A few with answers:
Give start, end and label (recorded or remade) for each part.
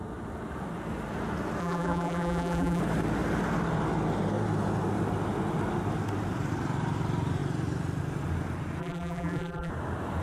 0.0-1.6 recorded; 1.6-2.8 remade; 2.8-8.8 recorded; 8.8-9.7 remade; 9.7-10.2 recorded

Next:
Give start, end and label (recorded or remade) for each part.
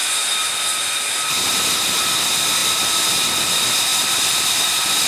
0.0-2.6 recorded; 2.6-3.3 remade; 3.3-3.9 recorded; 3.9-5.1 remade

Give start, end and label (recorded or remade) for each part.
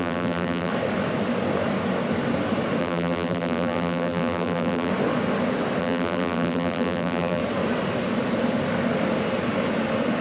0.0-0.7 remade; 0.7-2.8 recorded; 2.8-4.9 remade; 4.9-5.8 recorded; 5.8-7.4 remade; 7.4-10.2 recorded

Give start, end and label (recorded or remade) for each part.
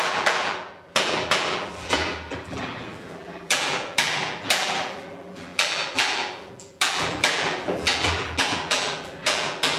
0.0-9.8 remade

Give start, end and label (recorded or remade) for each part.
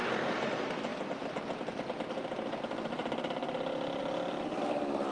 0.0-0.5 remade; 0.5-5.1 recorded